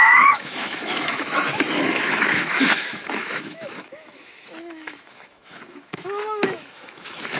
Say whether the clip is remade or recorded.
remade